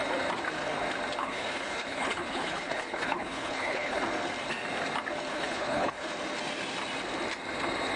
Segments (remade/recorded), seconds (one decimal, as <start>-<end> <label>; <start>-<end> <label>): 0.0-1.2 recorded; 1.2-4.0 remade; 4.0-5.3 recorded; 5.3-6.1 remade; 6.1-8.0 recorded